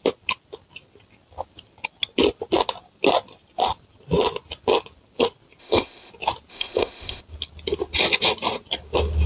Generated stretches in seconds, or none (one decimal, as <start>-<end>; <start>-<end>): 5.6-6.1; 6.5-7.2